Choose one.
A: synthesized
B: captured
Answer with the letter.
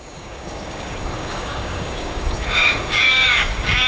A